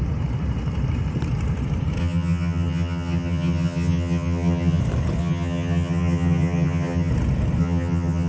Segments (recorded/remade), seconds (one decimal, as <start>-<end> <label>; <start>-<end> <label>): 0.0-2.0 recorded; 2.0-4.8 remade; 4.8-5.2 recorded; 5.2-7.1 remade; 7.1-7.6 recorded; 7.6-8.3 remade